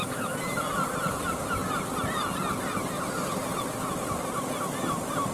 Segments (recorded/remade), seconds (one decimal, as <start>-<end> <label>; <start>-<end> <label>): 0.0-5.3 recorded